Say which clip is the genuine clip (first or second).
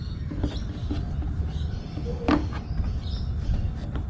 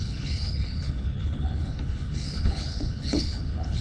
first